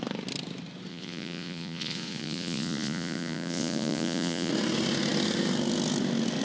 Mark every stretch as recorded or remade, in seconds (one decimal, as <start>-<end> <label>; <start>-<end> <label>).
0.0-0.9 recorded; 0.9-4.5 remade; 4.5-6.4 recorded